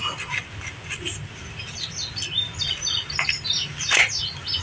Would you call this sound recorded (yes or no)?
yes